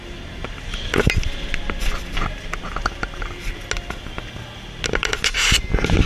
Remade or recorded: recorded